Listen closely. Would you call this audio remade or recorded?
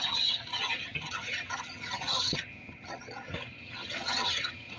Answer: remade